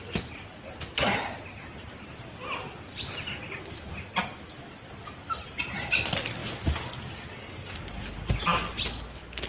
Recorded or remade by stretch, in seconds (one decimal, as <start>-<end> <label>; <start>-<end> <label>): 0.0-9.5 recorded